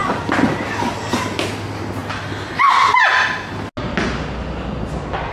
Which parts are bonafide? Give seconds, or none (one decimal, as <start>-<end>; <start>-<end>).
0.0-5.3